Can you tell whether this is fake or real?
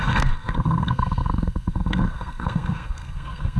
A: fake